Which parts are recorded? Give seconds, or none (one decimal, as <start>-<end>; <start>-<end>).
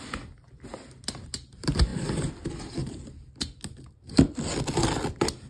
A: 0.0-5.5